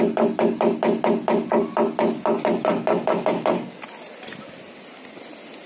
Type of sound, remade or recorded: recorded